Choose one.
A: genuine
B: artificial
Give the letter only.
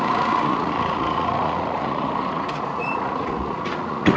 B